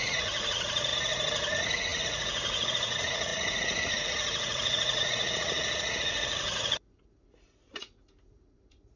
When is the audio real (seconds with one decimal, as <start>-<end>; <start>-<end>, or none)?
0.9-1.5